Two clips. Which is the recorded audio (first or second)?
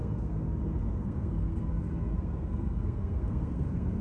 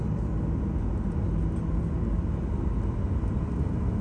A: second